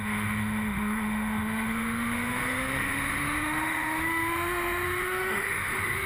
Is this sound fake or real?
fake